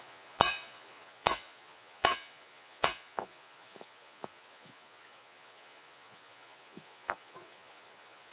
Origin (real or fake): fake